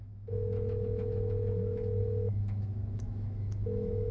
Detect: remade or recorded remade